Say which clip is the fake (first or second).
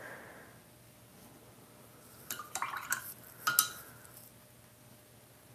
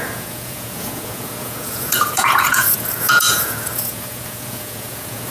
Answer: second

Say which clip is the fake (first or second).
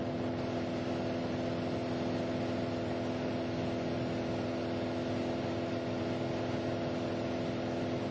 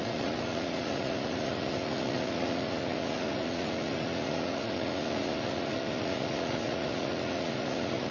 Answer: second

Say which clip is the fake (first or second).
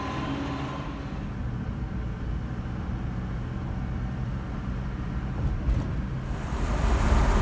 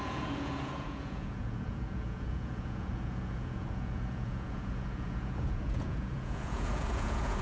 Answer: second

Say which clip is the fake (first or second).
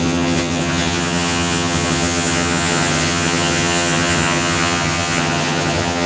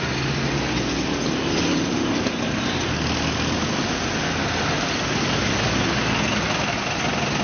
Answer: first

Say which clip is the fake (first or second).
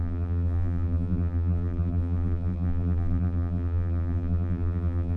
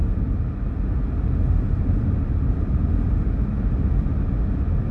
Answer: first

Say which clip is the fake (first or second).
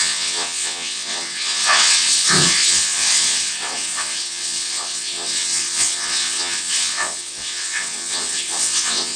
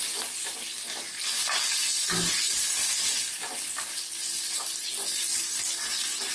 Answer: first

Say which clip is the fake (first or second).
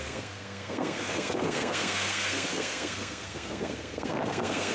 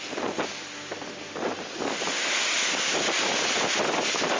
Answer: first